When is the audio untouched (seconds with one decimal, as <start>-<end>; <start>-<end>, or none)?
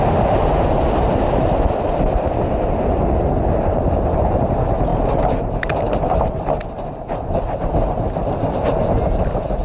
0.0-4.9; 7.4-9.6